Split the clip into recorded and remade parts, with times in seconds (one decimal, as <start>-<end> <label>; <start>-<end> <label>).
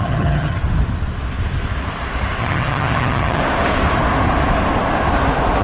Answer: 0.0-0.6 remade; 0.6-2.4 recorded; 2.4-3.4 remade; 3.4-5.6 recorded